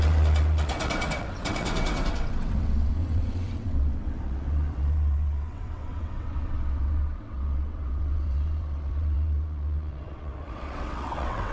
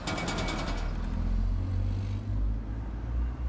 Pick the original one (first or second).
second